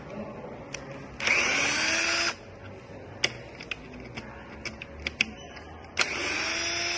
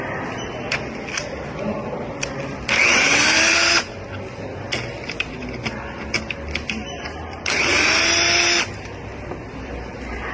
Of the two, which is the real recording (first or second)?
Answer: first